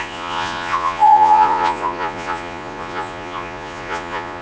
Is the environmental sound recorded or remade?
remade